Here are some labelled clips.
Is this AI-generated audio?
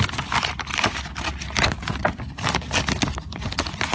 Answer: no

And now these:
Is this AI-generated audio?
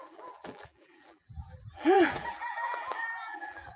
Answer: yes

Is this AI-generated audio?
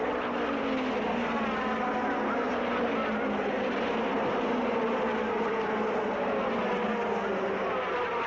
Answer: no